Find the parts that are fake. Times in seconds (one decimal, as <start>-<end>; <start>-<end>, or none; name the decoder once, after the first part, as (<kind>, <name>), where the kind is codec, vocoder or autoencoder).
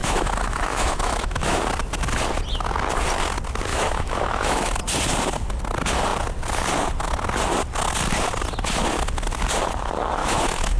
0.0-1.6 (autoencoder, DAC-VAE); 3.7-4.8; 10.2-10.8